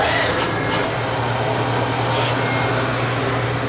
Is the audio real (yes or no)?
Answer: yes